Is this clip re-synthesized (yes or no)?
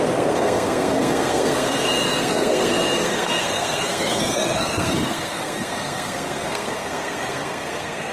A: yes